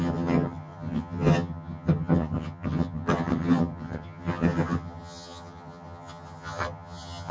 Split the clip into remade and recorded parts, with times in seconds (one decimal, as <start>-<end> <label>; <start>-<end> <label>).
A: 0.0-7.3 remade